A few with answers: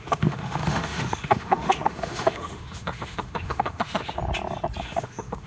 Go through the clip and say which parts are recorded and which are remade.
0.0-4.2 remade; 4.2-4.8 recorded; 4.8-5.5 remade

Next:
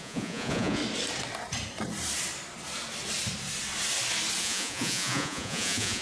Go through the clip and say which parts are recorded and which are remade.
0.0-0.8 remade; 0.8-4.4 recorded; 4.4-6.0 remade